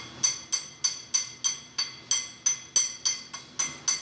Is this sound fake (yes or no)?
no